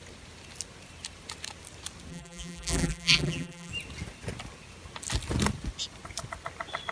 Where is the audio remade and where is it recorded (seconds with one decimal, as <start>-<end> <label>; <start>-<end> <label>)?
0.0-2.1 recorded; 2.1-3.7 remade; 3.7-6.9 recorded